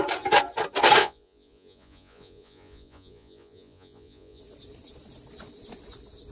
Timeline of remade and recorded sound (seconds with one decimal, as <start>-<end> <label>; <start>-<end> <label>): 0.0-1.0 recorded; 1.0-4.4 remade; 4.4-6.3 recorded